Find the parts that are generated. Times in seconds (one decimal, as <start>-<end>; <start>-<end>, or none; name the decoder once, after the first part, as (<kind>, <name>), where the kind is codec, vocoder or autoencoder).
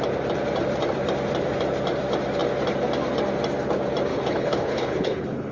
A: 4.1-5.5 (codec, HILCodec)